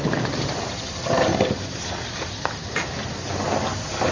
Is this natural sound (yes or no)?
yes